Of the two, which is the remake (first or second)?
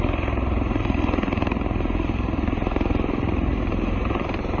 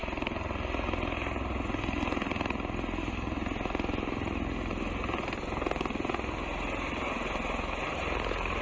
first